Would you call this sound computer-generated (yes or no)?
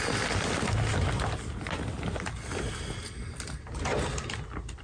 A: no